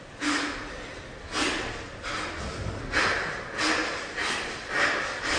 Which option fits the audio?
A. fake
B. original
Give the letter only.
B